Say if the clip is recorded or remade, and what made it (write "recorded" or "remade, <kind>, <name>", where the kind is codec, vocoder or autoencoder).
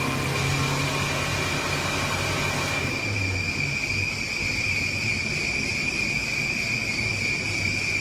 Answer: recorded